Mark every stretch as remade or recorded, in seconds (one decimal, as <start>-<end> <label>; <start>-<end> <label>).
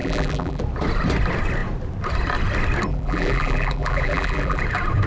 0.0-0.6 remade; 0.6-2.9 recorded; 2.9-4.6 remade; 4.6-5.1 recorded